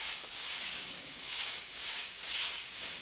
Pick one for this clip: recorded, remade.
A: remade